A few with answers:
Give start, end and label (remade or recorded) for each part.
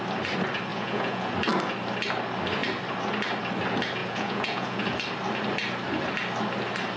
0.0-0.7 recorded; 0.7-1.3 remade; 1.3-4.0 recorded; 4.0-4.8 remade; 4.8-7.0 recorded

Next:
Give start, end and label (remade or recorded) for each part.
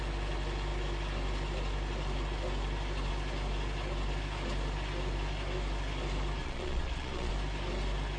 0.0-6.4 recorded; 6.4-7.3 remade; 7.3-8.2 recorded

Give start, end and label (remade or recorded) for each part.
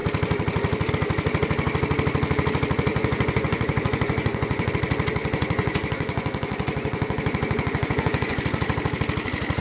0.0-2.9 recorded; 2.9-4.7 remade; 4.7-5.2 recorded; 5.2-8.4 remade; 8.4-9.6 recorded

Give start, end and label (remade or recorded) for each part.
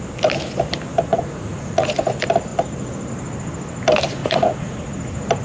0.0-1.1 recorded; 1.1-1.9 remade; 1.9-4.2 recorded; 4.2-4.7 remade; 4.7-5.4 recorded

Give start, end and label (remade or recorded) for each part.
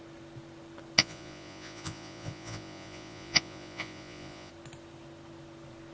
0.0-1.0 recorded; 1.0-4.5 remade; 4.5-5.9 recorded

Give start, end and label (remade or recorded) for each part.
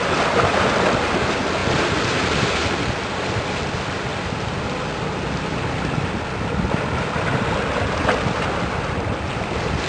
0.0-9.9 recorded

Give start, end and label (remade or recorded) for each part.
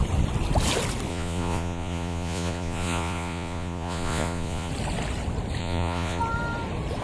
0.0-1.1 recorded; 1.1-4.7 remade; 4.7-5.6 recorded; 5.6-6.2 remade; 6.2-7.0 recorded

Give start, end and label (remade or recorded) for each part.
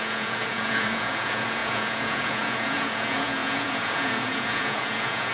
0.0-5.3 remade